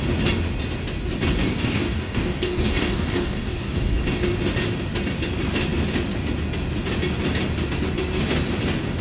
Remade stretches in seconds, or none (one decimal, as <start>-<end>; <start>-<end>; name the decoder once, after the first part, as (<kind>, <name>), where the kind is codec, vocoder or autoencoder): 1.4-4.0 (codec, DAC)